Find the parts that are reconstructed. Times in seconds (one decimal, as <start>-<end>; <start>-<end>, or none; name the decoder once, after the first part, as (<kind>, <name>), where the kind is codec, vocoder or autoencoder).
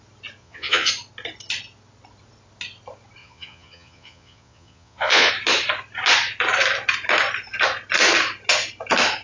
0.4-0.9 (vocoder, Vocos); 3.2-5.3